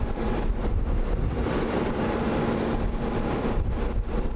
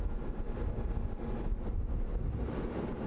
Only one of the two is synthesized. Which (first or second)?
first